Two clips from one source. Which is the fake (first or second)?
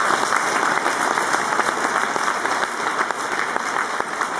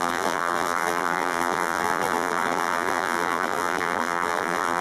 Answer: second